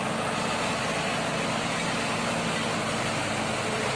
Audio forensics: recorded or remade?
recorded